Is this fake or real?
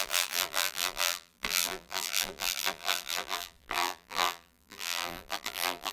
fake